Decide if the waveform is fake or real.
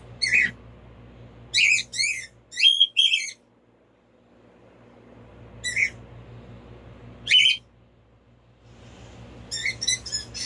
real